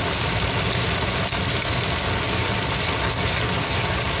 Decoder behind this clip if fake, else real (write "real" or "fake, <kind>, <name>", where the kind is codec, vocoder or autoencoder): real